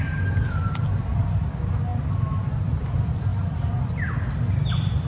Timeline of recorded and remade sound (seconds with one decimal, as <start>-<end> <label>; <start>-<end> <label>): 0.0-5.1 recorded